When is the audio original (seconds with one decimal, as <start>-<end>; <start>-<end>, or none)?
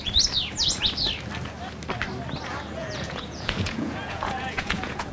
0.0-2.8